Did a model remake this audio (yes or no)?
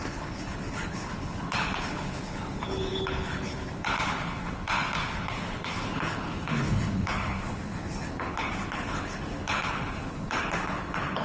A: yes